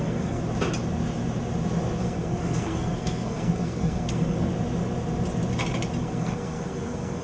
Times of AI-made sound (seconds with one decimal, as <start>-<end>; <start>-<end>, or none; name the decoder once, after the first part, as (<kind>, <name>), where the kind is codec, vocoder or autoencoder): 0.0-0.4 (codec, SNAC); 2.0-4.5; 6.0-7.2